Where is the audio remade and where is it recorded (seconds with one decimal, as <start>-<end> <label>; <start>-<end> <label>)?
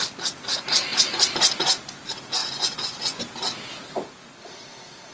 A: 0.0-2.4 recorded; 2.4-3.2 remade; 3.2-5.1 recorded